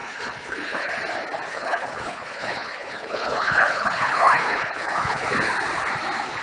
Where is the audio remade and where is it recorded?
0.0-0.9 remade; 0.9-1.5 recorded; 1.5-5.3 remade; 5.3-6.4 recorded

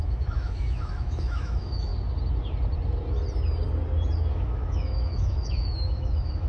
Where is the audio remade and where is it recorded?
0.0-1.9 remade; 1.9-4.3 recorded; 4.3-6.5 remade

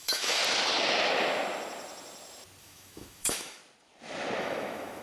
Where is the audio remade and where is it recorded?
0.0-0.4 remade; 0.4-2.6 recorded; 2.6-3.6 remade; 3.6-4.4 recorded; 4.4-5.0 remade

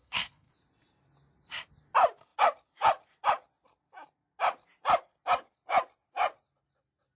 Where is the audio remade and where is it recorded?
0.0-0.5 remade; 0.5-7.2 recorded

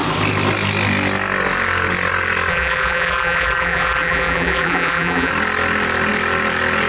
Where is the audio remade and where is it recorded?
0.0-2.5 recorded; 2.5-5.3 remade; 5.3-6.9 recorded